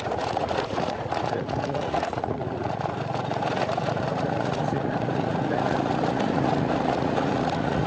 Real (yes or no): no